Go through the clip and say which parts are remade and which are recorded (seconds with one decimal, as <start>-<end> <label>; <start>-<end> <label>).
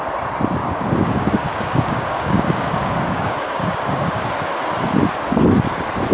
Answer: 0.0-0.6 recorded; 0.6-4.3 remade; 4.3-6.1 recorded